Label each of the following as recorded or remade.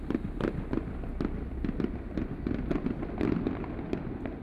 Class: recorded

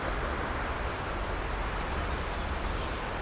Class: recorded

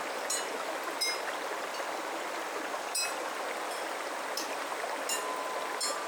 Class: recorded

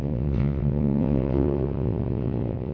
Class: remade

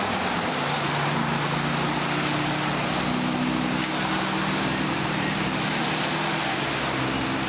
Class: recorded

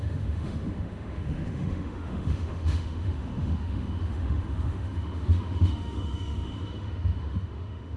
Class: remade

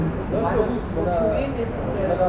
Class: recorded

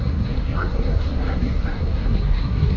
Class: remade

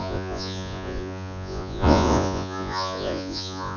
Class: remade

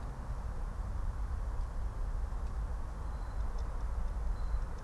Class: recorded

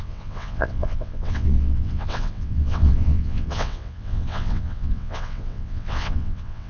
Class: remade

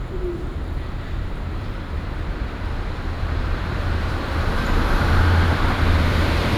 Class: remade